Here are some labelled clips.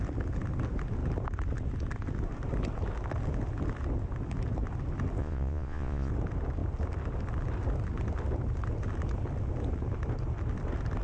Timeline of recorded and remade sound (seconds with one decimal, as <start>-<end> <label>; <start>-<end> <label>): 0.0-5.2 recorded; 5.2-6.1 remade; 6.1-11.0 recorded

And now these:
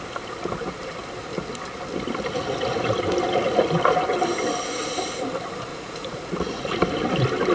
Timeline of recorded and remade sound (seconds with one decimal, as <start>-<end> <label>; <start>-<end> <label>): 0.0-5.7 recorded; 5.7-6.8 remade; 6.8-7.5 recorded

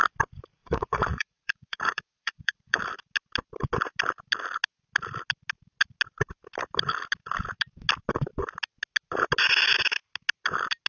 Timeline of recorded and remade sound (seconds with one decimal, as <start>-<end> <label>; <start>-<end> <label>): 0.0-0.6 recorded; 0.6-2.8 remade; 2.8-10.9 recorded

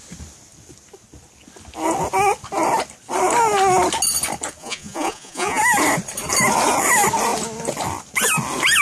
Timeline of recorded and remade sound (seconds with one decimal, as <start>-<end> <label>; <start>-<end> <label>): 0.0-4.6 recorded; 4.6-5.6 remade; 5.6-8.8 recorded